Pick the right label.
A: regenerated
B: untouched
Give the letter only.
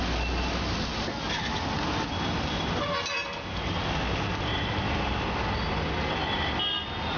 B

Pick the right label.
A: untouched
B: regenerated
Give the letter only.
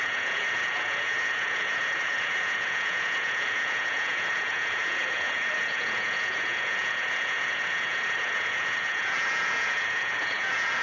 B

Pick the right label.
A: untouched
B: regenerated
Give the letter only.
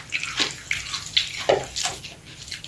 A